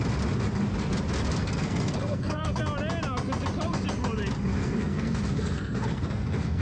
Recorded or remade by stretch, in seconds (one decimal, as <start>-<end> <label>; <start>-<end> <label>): 0.0-1.4 recorded; 1.4-2.6 remade; 2.6-4.5 recorded; 4.5-6.6 remade